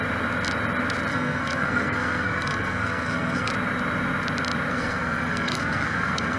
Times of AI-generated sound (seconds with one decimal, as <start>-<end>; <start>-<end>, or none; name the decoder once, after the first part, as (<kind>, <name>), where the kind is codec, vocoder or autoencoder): 1.1-3.5 (codec, SNAC); 4.7-6.4